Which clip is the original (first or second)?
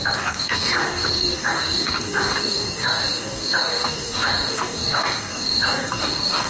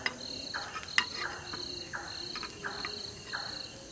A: second